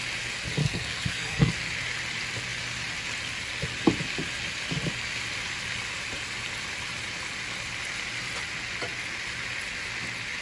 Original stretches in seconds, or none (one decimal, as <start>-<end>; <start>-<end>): 0.0-0.6; 1.5-10.4